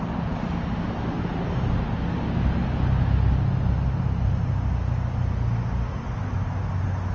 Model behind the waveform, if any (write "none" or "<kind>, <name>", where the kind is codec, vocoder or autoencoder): none